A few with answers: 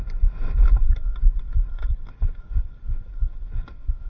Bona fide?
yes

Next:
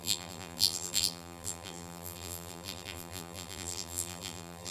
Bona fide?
no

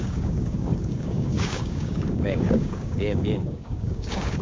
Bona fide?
no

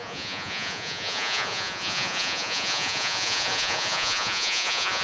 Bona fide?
no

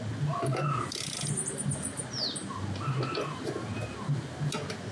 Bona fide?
yes